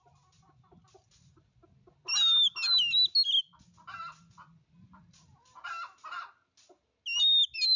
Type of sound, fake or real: real